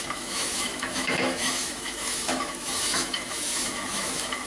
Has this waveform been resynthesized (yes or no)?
yes